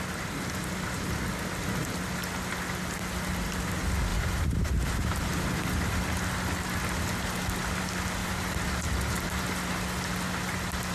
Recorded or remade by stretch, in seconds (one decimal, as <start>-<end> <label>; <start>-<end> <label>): 0.0-4.1 recorded; 4.1-5.2 remade; 5.2-8.2 recorded; 8.2-9.4 remade; 9.4-10.9 recorded